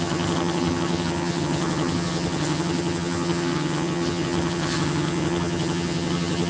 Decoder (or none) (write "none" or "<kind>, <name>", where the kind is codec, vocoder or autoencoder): vocoder, HiFi-GAN